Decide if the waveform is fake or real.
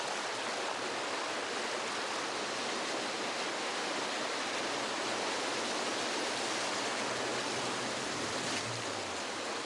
real